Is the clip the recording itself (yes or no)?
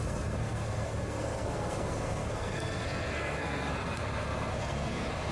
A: no